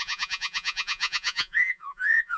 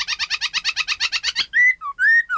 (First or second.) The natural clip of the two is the second